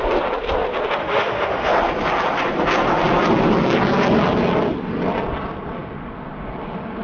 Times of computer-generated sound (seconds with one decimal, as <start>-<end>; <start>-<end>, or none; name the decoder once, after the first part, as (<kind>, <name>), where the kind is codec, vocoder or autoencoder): 1.0-1.7 (autoencoder, DAC-VAE)